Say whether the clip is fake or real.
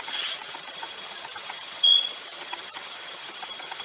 fake